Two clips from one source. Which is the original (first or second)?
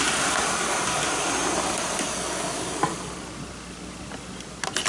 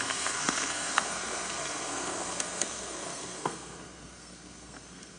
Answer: first